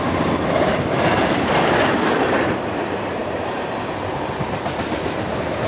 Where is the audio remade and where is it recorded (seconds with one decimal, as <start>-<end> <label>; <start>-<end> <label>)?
0.0-3.2 remade; 3.2-4.1 recorded; 4.1-5.7 remade